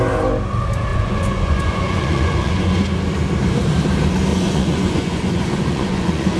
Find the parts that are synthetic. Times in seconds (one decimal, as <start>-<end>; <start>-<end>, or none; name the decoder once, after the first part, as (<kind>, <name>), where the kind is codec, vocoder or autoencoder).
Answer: 0.9-2.8 (vocoder, Vocos); 4.3-6.4